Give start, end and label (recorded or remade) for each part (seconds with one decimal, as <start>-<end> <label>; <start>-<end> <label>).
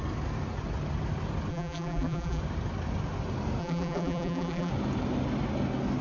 0.0-1.5 recorded; 1.5-2.4 remade; 2.4-3.6 recorded; 3.6-4.7 remade; 4.7-6.0 recorded